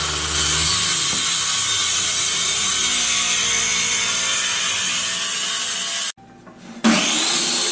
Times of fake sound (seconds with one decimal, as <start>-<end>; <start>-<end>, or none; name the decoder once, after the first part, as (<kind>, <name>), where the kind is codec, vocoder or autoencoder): 1.8-2.7 (vocoder, Vocos)